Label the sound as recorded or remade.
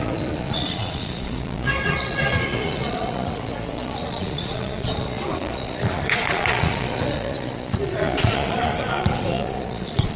remade